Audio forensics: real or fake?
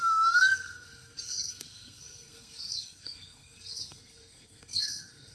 fake